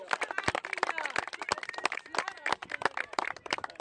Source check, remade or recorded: recorded